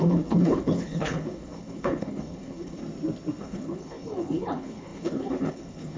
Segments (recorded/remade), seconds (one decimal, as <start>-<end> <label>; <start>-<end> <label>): 0.0-2.8 remade; 2.8-3.4 recorded; 3.4-6.0 remade